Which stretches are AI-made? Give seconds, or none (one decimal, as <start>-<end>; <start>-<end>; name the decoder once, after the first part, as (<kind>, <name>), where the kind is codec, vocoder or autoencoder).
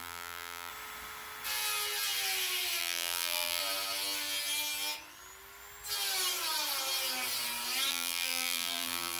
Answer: 0.0-0.7 (vocoder, BigVGAN v2); 2.8-3.6; 7.9-9.2